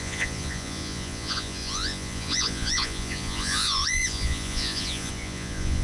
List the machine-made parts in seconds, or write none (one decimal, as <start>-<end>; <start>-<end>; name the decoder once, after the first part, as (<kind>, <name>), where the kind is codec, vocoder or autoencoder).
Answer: 0.0-5.8 (vocoder, Vocos)

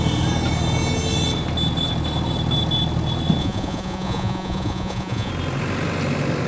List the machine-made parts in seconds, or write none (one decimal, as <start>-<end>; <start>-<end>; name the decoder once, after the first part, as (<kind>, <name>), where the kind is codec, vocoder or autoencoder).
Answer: 3.4-5.3 (vocoder, Vocos)